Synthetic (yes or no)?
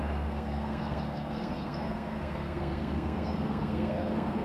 yes